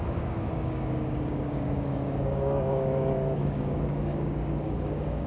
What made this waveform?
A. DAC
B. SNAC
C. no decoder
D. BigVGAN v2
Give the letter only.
A